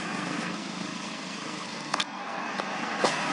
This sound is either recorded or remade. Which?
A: remade